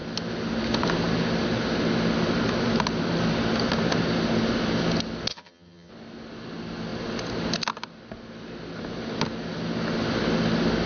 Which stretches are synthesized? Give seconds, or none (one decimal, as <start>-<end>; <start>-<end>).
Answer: 5.3-5.9